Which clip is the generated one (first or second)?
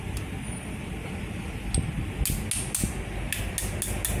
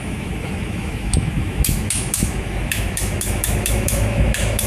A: second